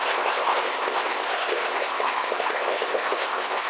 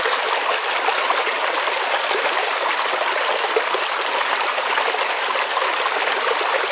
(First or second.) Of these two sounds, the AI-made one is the first